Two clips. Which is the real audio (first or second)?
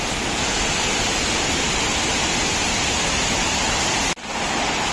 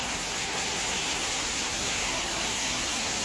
first